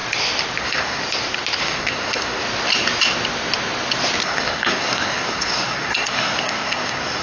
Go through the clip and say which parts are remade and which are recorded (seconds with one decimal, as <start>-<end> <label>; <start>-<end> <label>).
0.0-0.6 recorded; 0.6-1.0 remade; 1.0-1.6 recorded; 1.6-2.4 remade; 2.4-4.2 recorded; 4.2-7.2 remade